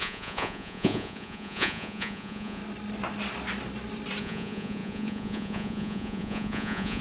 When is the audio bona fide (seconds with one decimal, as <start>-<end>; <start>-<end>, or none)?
2.6-4.2